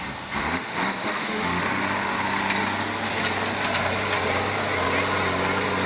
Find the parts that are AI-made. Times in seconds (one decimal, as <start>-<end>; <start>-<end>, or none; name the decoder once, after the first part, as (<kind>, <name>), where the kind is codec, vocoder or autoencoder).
0.4-1.6 (autoencoder, DAC-VAE)